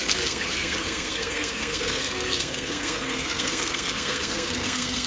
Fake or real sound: fake